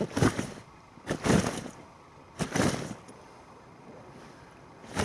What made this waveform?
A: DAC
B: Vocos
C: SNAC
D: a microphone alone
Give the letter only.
D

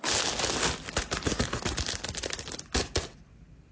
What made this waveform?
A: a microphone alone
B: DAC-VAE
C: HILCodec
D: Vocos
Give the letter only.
A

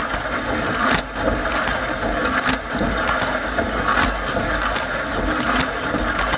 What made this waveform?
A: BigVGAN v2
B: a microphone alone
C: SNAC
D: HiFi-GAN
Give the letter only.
B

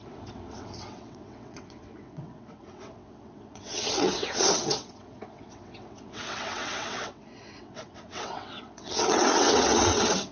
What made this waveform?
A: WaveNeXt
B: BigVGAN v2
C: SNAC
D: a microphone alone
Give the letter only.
A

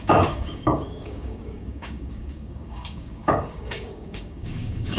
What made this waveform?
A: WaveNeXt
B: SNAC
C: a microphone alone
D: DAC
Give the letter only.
D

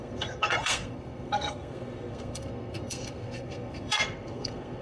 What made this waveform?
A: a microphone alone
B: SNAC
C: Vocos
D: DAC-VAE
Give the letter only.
B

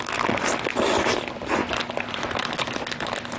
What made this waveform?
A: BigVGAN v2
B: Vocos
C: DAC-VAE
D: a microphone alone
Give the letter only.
D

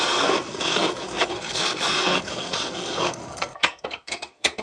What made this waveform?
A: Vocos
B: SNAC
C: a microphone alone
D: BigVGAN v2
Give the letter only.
B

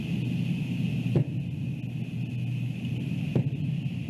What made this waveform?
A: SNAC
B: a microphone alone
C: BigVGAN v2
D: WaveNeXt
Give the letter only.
B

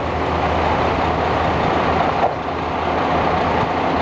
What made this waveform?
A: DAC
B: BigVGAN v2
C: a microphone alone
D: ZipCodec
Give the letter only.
C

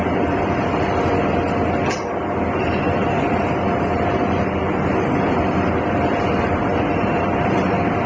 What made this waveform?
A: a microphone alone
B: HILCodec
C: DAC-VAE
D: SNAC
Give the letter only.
A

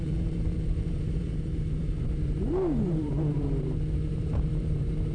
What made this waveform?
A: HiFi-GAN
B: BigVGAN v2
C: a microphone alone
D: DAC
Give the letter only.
B